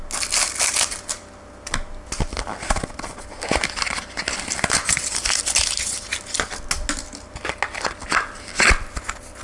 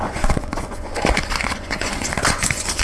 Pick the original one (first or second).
first